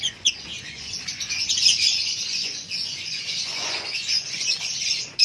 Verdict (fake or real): fake